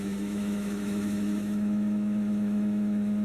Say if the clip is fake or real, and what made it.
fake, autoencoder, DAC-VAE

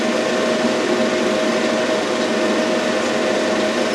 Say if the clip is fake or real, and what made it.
real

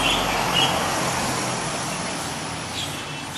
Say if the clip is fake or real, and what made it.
real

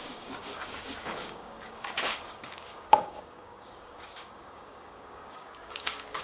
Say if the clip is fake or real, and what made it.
fake, codec, DAC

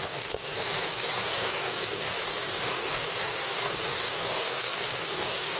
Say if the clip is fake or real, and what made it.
fake, codec, DAC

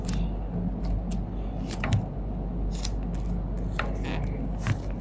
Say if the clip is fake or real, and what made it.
real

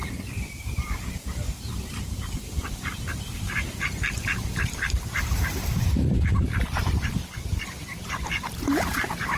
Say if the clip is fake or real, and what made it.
fake, vocoder, BigVGAN v2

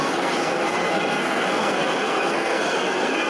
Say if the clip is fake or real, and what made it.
fake, codec, SNAC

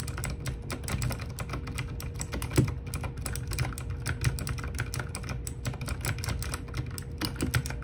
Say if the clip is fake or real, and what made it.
real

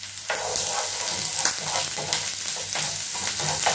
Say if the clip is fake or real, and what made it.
real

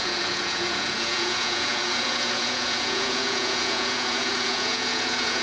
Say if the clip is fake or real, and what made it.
fake, vocoder, Vocos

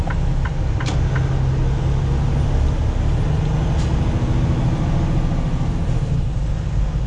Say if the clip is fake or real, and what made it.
real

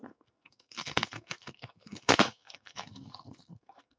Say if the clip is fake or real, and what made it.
fake, codec, SNAC